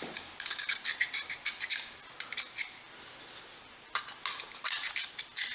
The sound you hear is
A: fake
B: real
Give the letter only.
B